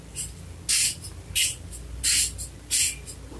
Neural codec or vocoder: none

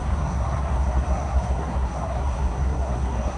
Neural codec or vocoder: codec, SNAC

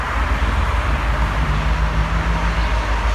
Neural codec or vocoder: none